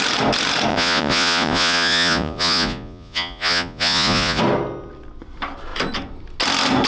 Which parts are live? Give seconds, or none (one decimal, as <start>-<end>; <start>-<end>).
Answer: 0.0-0.7; 4.4-6.9